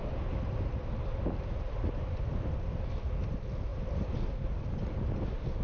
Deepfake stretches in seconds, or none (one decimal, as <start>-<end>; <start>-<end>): none